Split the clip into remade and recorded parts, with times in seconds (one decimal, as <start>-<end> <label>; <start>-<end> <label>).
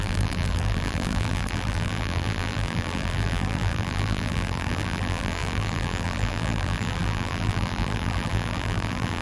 0.0-9.2 remade